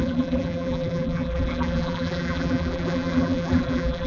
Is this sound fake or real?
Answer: fake